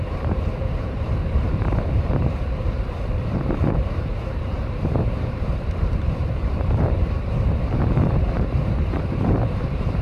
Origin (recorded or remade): remade